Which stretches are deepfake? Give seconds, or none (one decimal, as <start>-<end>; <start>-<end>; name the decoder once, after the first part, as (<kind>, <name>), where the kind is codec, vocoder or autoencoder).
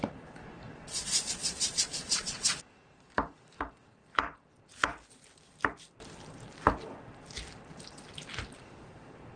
0.8-2.6 (vocoder, Vocos)